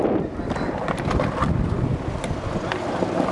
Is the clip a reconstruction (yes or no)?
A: no